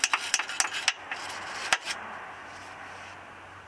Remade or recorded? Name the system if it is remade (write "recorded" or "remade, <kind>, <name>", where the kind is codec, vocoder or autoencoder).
recorded